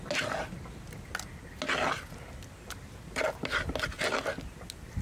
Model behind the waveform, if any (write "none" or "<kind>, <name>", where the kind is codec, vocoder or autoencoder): none